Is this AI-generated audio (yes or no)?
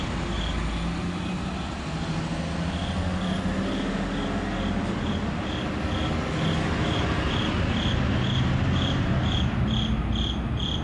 no